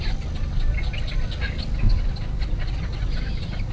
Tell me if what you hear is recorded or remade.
recorded